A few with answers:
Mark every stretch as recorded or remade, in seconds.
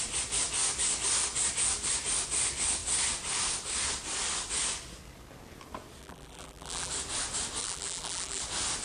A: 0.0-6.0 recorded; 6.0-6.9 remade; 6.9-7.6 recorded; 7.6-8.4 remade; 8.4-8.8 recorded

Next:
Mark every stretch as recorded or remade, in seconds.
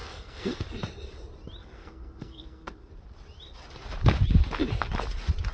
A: 0.0-0.6 remade; 0.6-1.6 recorded; 1.6-2.9 remade; 2.9-5.5 recorded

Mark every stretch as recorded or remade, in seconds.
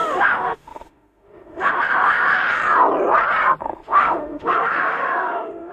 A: 0.0-2.6 remade; 2.6-3.6 recorded; 3.6-5.7 remade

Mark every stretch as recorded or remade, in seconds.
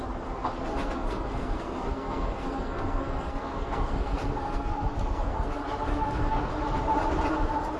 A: 0.0-0.8 recorded; 0.8-5.5 remade; 5.5-5.9 recorded; 5.9-6.5 remade; 6.5-7.8 recorded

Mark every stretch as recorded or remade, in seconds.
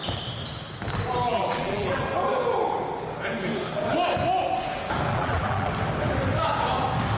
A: 0.0-1.3 recorded; 1.3-2.0 remade; 2.0-5.1 recorded; 5.1-5.7 remade; 5.7-7.2 recorded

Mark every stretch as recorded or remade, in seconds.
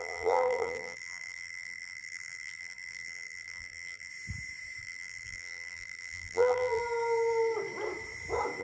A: 0.0-4.1 remade; 4.1-4.8 recorded; 4.8-6.8 remade; 6.8-8.6 recorded